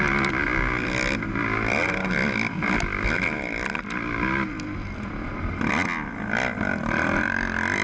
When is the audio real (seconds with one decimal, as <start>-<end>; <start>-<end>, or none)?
0.0-7.8